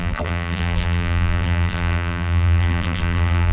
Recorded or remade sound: remade